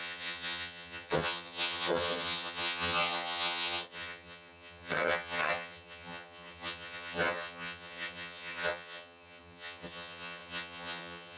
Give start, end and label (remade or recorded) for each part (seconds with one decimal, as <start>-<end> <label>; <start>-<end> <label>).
0.0-11.4 remade

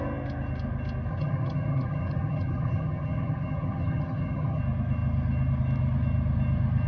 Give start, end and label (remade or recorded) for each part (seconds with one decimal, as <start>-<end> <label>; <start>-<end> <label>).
0.0-1.1 recorded; 1.1-4.6 remade; 4.6-6.9 recorded

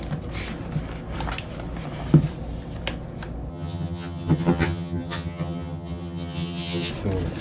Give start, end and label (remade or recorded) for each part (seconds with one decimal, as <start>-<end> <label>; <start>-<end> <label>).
0.0-3.5 recorded; 3.5-6.9 remade; 6.9-7.4 recorded